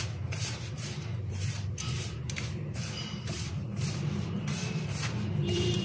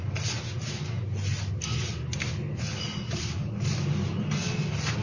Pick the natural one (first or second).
second